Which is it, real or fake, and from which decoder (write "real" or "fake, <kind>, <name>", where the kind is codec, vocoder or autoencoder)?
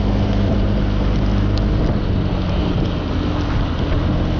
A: real